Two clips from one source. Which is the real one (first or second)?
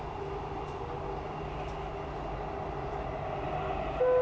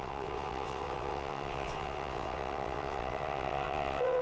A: first